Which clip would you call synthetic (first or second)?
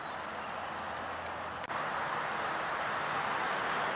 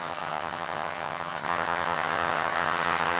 second